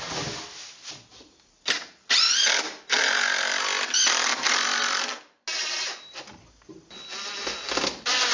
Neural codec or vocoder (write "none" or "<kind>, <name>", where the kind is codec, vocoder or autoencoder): none